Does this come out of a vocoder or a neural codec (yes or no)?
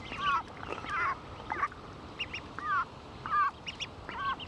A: no